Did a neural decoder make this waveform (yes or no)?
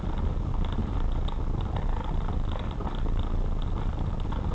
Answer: no